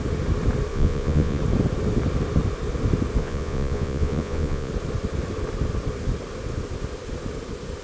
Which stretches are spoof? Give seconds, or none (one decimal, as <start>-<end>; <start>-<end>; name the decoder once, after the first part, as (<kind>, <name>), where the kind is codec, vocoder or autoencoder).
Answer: 0.7-1.4 (vocoder, Vocos); 3.2-4.7